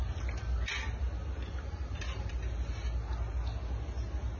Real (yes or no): yes